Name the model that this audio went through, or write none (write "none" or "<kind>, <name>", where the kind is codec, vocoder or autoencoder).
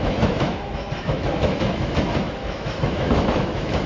autoencoder, DAC-VAE